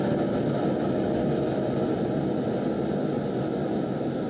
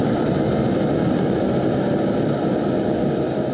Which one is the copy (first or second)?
second